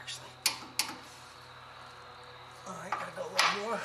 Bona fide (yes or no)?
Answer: yes